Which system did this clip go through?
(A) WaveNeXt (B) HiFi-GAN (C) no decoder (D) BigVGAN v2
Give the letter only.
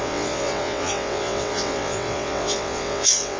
A